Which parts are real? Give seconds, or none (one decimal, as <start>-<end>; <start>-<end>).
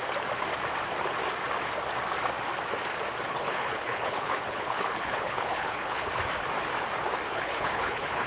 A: 0.0-3.3; 6.1-7.3